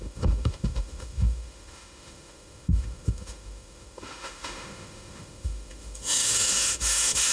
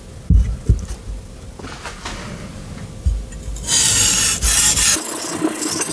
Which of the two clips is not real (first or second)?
first